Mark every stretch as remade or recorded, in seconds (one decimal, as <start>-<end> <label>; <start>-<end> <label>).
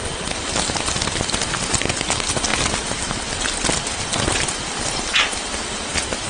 0.0-6.3 recorded